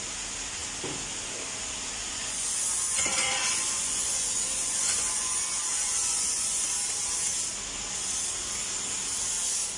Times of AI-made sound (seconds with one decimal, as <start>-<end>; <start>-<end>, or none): 2.0-6.7